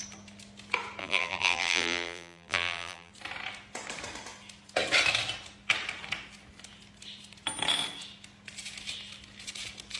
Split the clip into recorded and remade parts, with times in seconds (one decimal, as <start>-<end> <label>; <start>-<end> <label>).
0.0-1.0 recorded; 1.0-3.1 remade; 3.1-10.0 recorded